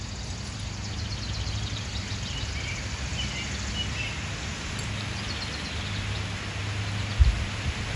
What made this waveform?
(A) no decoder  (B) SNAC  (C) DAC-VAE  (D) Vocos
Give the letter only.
A